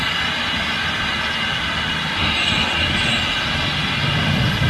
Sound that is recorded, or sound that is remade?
recorded